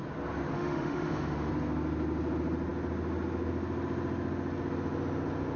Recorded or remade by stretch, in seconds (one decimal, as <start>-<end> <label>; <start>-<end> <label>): 0.0-0.5 recorded; 0.5-1.5 remade; 1.5-5.6 recorded